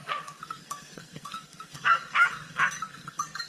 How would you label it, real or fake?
fake